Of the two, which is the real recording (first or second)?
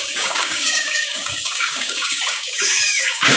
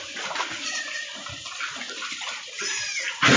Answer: second